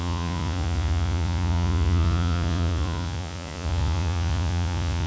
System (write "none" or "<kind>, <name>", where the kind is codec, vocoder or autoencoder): vocoder, Vocos